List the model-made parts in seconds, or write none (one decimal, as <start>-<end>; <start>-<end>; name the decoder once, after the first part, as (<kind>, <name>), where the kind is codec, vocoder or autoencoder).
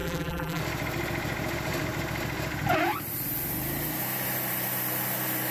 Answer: 0.0-0.6 (vocoder, BigVGAN v2)